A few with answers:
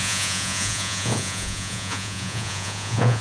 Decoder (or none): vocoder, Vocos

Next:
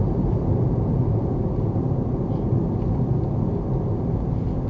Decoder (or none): none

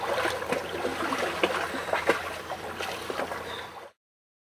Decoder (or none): none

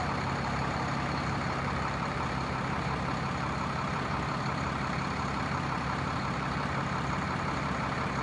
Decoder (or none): vocoder, BigVGAN v2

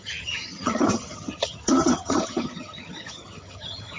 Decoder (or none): vocoder, HiFi-GAN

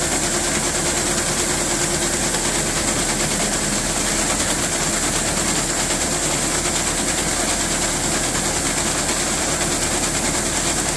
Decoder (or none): none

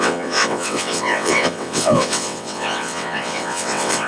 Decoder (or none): vocoder, WaveNeXt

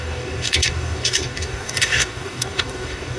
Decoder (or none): codec, DAC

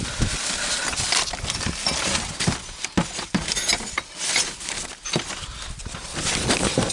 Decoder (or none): none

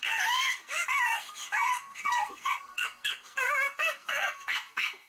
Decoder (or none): codec, SNAC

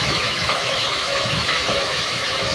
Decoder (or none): autoencoder, DAC-VAE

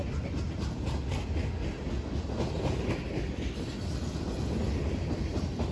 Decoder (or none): none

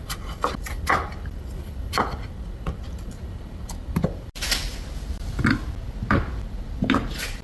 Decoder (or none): none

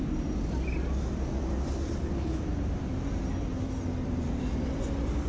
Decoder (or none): none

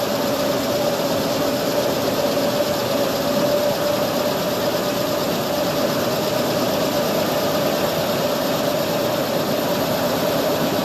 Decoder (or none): none